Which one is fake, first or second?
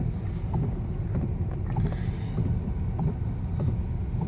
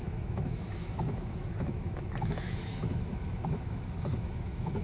second